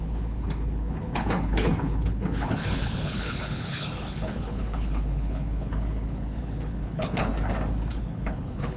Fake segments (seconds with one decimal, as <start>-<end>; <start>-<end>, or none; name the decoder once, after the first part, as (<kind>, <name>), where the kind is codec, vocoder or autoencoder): 0.0-7.3 (codec, HILCodec); 7.9-8.8